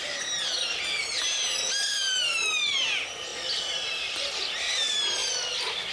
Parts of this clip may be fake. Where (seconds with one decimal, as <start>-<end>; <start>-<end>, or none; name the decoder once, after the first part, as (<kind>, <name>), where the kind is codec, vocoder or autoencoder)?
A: 1.9-2.6 (vocoder, BigVGAN v2); 3.3-4.4; 5.2-5.9